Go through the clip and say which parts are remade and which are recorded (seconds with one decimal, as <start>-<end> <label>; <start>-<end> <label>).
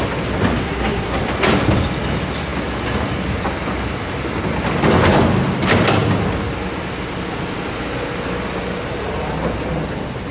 0.0-0.6 recorded; 0.6-1.2 remade; 1.2-10.3 recorded